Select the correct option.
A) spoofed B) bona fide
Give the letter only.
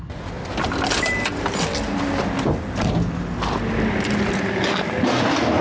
B